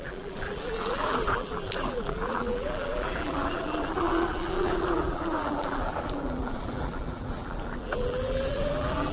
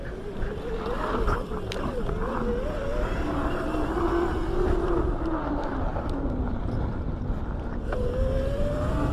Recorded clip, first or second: second